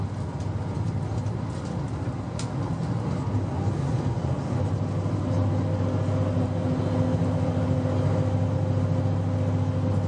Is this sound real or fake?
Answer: real